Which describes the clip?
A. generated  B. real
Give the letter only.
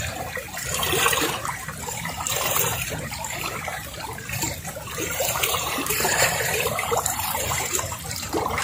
A